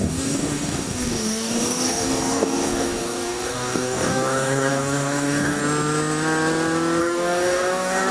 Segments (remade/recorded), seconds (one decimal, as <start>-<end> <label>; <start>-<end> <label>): 0.0-5.6 remade; 5.6-7.0 recorded; 7.0-8.1 remade